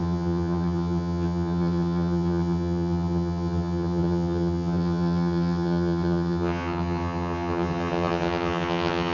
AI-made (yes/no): yes